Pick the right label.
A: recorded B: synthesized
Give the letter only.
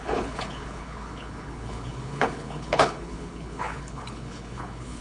B